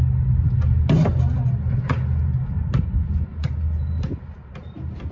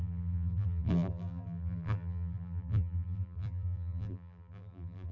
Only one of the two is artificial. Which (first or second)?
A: second